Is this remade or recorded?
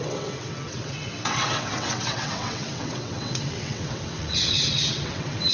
remade